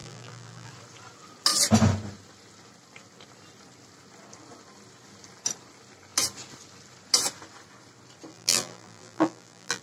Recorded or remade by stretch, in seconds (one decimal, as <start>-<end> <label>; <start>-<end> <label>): 0.0-0.7 remade; 0.7-8.3 recorded; 8.3-9.8 remade